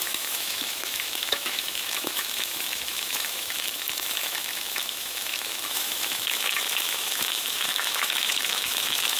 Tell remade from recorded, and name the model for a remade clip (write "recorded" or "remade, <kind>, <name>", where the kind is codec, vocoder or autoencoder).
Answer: remade, autoencoder, DAC-VAE